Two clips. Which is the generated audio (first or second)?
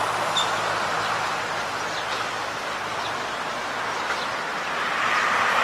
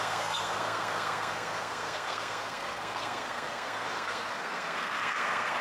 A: second